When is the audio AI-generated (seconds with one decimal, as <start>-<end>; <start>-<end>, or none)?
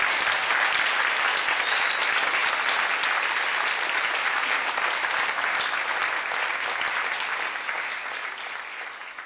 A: none